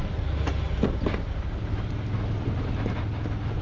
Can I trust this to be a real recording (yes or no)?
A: yes